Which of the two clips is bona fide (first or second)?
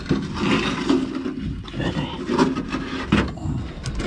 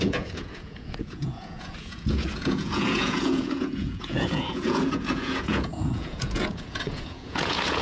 first